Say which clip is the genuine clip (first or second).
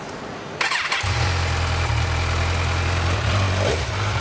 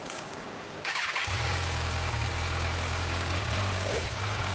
first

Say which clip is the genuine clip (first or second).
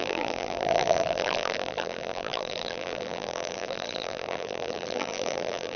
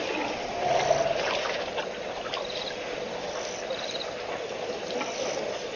second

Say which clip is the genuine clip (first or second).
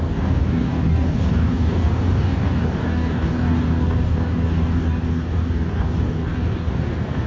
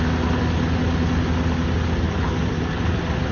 second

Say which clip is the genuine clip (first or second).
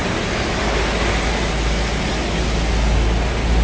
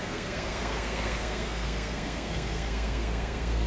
first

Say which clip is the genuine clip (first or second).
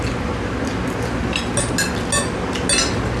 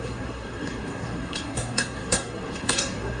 first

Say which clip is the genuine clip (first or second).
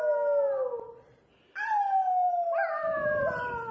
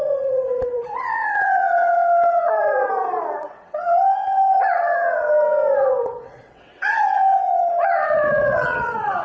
first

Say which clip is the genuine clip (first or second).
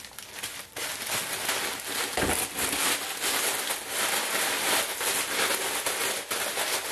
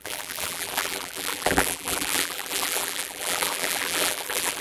first